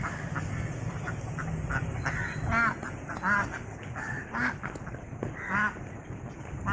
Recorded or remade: recorded